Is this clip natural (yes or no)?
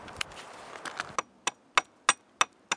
yes